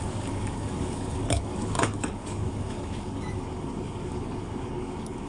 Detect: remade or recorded remade